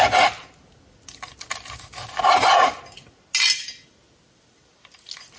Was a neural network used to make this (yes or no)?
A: no